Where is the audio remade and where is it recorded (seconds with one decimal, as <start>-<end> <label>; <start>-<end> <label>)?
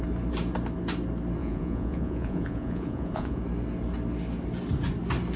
0.0-1.4 recorded; 1.4-3.4 remade; 3.4-5.4 recorded